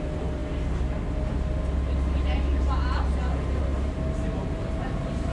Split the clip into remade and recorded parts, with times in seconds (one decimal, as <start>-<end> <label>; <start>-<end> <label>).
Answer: 0.0-5.3 recorded